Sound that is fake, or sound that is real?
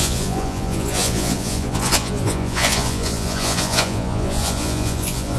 fake